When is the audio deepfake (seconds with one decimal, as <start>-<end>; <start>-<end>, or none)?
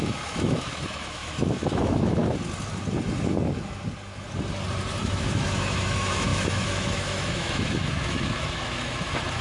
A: 0.0-2.2; 5.0-9.4